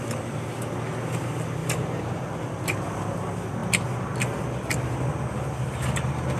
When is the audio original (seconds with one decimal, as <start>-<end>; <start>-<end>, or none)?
0.0-1.6; 2.3-6.4